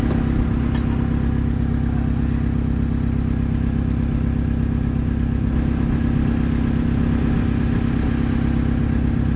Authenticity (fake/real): real